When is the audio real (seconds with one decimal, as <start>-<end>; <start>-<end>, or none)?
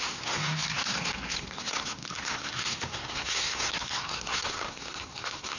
none